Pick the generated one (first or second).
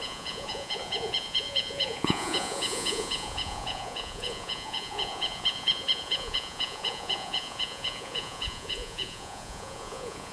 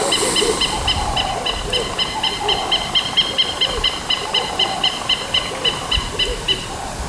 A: first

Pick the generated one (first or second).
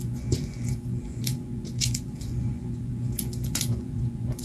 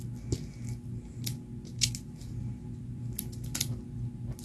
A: first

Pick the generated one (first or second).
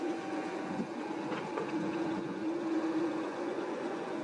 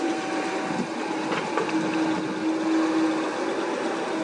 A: first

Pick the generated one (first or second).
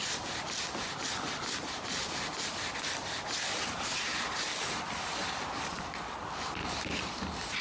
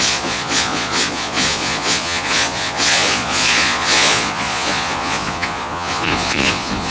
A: second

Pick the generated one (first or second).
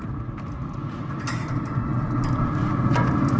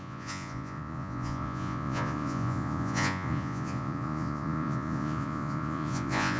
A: second